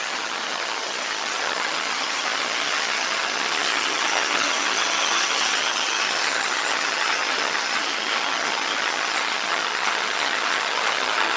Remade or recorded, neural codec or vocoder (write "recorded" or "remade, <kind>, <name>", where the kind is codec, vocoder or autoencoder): remade, vocoder, HiFi-GAN